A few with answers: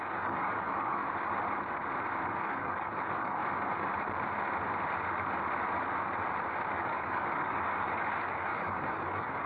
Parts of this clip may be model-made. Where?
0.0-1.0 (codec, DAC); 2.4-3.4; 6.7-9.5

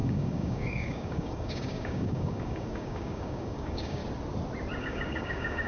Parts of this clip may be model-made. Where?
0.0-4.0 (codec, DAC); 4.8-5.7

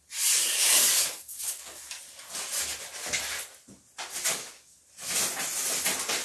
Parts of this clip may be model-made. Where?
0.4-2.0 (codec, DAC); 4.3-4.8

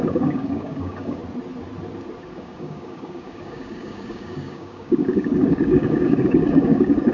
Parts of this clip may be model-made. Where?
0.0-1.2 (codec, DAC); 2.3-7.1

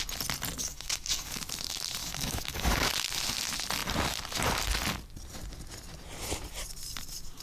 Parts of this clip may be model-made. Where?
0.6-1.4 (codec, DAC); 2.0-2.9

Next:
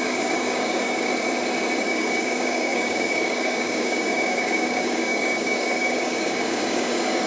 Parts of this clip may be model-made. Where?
0.0-1.1 (codec, DAC); 1.8-7.3

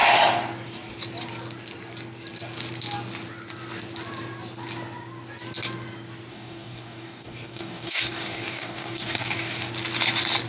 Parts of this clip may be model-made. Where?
6.3-9.7 (codec, DAC)

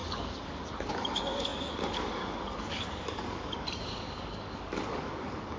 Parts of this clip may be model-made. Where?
0.0-5.6 (codec, DAC)